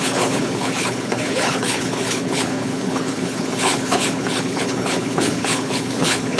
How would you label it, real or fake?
fake